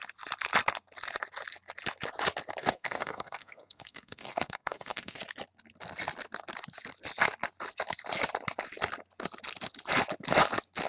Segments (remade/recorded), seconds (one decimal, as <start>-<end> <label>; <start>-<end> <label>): 0.0-2.6 recorded; 2.6-5.2 remade; 5.2-10.9 recorded